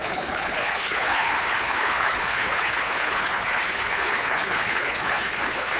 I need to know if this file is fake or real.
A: fake